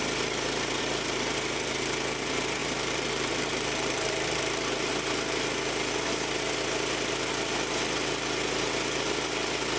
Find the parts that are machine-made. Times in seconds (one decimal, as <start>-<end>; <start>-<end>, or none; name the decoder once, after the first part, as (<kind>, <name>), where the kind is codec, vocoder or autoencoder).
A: 2.6-4.9 (vocoder, BigVGAN v2)